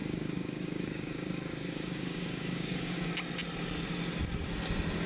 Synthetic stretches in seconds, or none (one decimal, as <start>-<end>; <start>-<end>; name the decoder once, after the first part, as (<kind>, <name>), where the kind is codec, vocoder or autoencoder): 0.0-3.1 (codec, DAC)